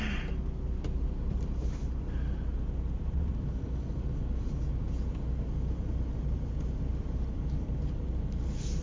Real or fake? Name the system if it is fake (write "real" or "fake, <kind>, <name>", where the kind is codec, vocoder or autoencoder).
real